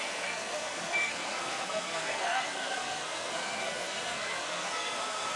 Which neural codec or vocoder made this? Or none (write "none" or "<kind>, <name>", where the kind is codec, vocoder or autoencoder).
codec, SNAC